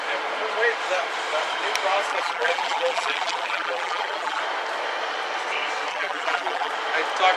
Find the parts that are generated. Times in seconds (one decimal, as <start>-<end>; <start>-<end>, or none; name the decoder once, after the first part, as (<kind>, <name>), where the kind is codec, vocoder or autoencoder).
2.1-4.4 (vocoder, BigVGAN v2); 5.9-6.7